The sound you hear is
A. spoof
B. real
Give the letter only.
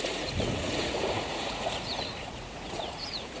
A